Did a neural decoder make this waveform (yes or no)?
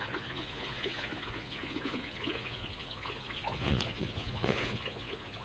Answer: yes